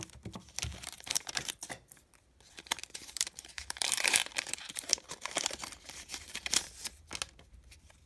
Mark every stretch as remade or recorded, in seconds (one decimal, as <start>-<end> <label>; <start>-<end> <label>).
0.0-0.7 recorded; 0.7-1.5 remade; 1.5-2.8 recorded; 2.8-6.4 remade; 6.4-8.1 recorded